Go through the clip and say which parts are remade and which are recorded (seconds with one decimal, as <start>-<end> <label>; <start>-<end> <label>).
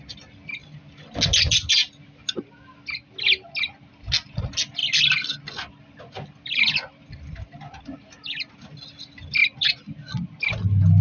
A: 0.0-11.0 recorded